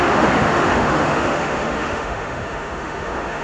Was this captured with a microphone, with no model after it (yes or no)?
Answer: no